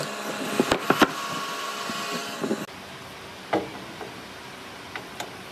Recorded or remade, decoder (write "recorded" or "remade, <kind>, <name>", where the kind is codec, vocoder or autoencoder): recorded